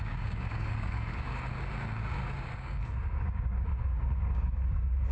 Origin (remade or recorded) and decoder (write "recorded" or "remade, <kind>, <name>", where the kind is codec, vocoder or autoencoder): remade, codec, DAC